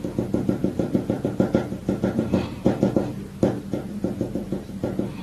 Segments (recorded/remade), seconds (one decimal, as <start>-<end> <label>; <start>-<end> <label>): 0.0-0.6 recorded; 0.6-1.3 remade; 1.3-1.8 recorded; 1.8-5.2 remade